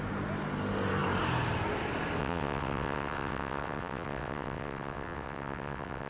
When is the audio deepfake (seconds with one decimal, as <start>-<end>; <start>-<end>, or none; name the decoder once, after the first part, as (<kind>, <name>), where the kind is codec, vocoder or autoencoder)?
2.2-6.1 (vocoder, WaveNeXt)